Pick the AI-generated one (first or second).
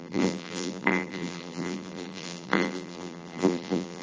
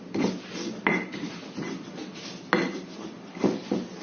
first